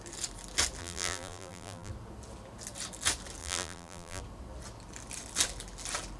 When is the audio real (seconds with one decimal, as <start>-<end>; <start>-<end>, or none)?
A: 0.0-0.8; 1.9-3.4; 4.2-6.2